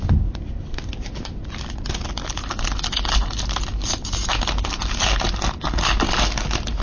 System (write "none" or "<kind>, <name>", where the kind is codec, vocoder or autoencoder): none